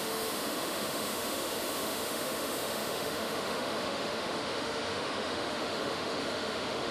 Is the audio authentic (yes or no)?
no